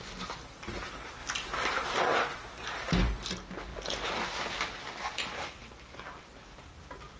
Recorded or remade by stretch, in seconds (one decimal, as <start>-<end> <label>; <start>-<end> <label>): 0.0-1.2 recorded; 1.2-2.0 remade; 2.0-7.2 recorded